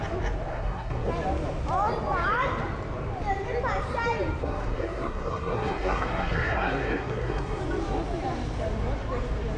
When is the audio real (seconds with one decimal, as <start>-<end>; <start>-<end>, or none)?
0.0-0.5; 1.1-4.4; 7.6-9.6